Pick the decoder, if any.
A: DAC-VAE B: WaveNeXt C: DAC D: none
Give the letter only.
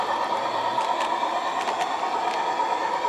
D